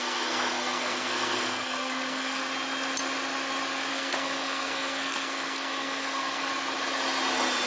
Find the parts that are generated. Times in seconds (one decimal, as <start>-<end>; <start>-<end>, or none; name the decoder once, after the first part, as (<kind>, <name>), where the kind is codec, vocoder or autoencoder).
0.0-2.4 (codec, SNAC); 3.9-6.5